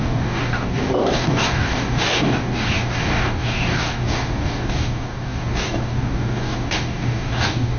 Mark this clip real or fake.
fake